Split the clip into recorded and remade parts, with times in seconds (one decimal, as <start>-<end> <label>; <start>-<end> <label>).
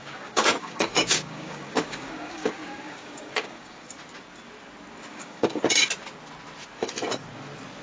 0.0-3.9 remade; 3.9-5.1 recorded; 5.1-5.6 remade; 5.6-7.8 recorded